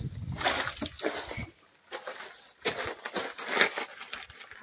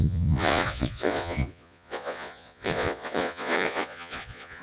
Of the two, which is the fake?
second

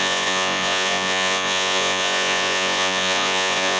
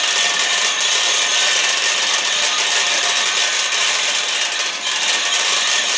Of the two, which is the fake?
first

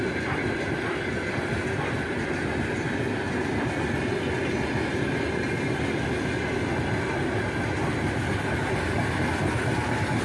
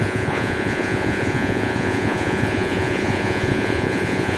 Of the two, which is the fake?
second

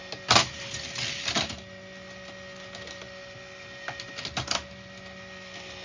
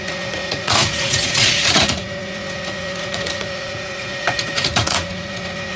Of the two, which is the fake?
second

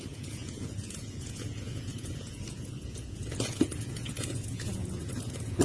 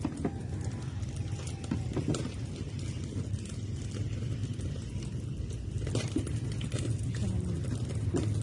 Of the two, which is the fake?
first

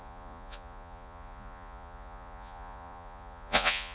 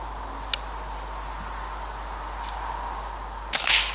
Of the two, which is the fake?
first